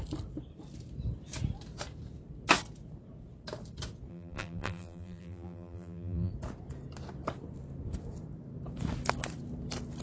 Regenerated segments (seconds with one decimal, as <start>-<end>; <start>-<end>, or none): 4.1-6.3